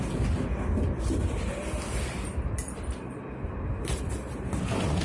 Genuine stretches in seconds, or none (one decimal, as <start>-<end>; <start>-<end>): 0.0-5.0